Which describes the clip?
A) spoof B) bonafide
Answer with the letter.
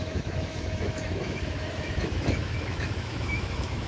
A